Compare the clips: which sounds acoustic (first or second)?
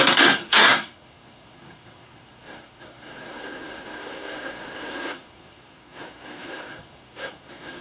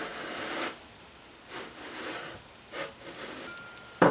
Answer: second